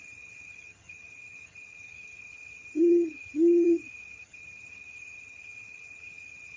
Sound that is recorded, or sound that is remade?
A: remade